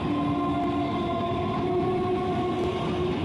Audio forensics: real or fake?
real